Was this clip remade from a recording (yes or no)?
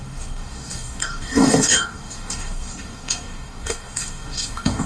yes